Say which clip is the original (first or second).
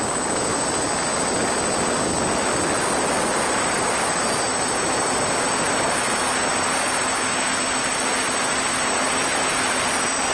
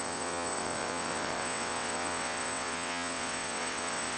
first